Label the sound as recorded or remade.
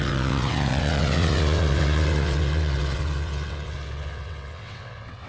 remade